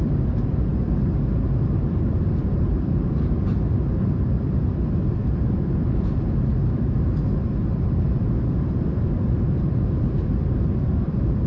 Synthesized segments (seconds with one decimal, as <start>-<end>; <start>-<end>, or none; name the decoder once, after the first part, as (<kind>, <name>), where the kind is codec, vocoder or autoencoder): 0.0-11.5 (vocoder, BigVGAN v2)